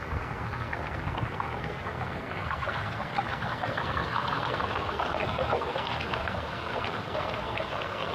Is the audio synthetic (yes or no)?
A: yes